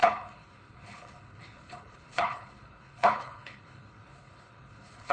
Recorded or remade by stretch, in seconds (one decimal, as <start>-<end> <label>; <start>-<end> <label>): 0.0-5.1 remade

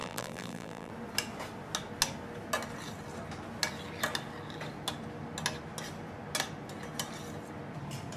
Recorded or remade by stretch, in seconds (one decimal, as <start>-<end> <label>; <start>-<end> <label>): 0.0-0.9 remade; 0.9-8.2 recorded

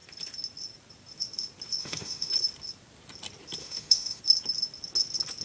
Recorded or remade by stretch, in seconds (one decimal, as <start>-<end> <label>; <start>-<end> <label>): 0.0-1.8 recorded; 1.8-2.3 remade; 2.3-3.6 recorded; 3.6-4.2 remade; 4.2-5.4 recorded

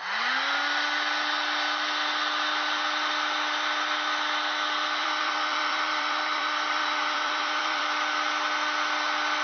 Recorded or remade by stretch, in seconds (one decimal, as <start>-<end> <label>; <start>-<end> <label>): 0.0-5.0 recorded; 5.0-7.8 remade; 7.8-9.4 recorded

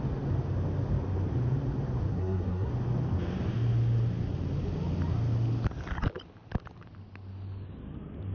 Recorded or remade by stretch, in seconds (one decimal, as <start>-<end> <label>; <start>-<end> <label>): 0.0-2.1 recorded; 2.1-2.7 remade; 2.7-8.3 recorded

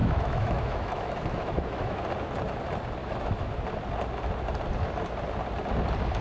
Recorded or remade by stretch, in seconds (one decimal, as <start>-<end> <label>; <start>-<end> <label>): 0.0-2.0 remade; 2.0-3.0 recorded; 3.0-3.5 remade; 3.5-6.2 recorded

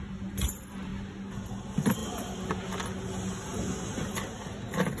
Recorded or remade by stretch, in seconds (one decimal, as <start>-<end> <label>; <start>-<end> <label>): 0.0-5.0 recorded

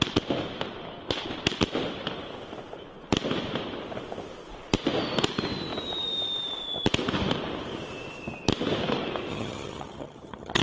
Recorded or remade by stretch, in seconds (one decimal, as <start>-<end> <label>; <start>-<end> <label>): 0.0-9.3 recorded; 9.3-10.6 remade